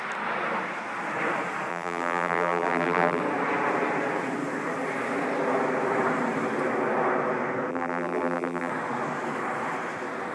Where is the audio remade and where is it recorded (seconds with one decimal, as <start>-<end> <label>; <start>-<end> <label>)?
0.0-1.7 recorded; 1.7-3.2 remade; 3.2-7.7 recorded; 7.7-8.7 remade; 8.7-10.3 recorded